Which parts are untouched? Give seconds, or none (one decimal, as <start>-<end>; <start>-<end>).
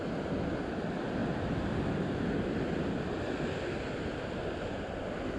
0.0-5.4